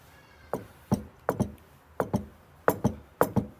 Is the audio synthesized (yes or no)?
yes